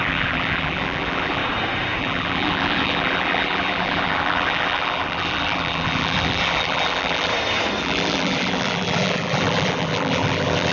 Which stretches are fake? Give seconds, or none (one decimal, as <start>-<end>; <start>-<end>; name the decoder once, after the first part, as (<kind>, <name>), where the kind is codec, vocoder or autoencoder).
0.0-1.4 (vocoder, BigVGAN v2); 2.0-7.3; 7.8-10.7